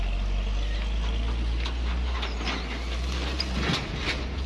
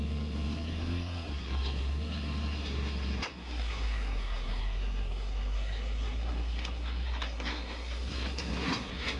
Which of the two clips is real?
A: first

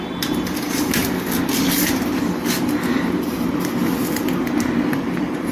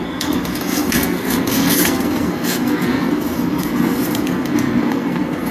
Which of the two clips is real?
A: first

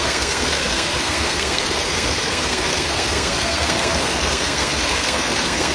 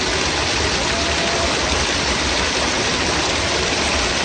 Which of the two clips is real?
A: second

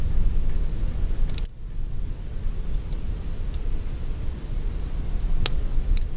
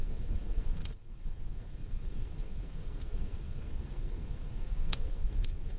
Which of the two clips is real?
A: first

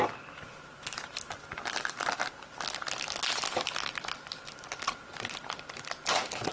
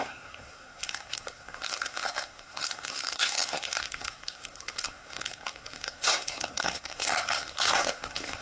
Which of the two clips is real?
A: first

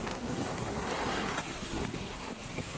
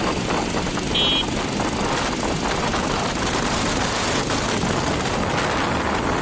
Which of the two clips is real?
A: second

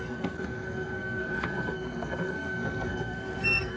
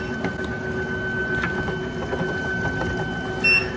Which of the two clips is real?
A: second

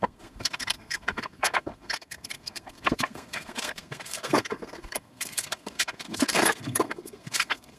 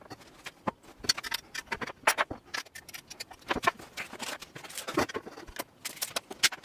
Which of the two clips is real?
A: second